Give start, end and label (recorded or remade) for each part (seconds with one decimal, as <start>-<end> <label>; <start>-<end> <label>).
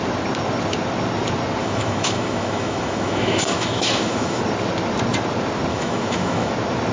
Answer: 0.0-1.6 recorded; 1.6-4.4 remade; 4.4-5.7 recorded; 5.7-6.5 remade; 6.5-6.9 recorded